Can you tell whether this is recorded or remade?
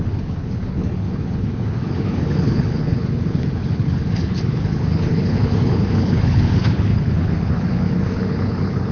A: remade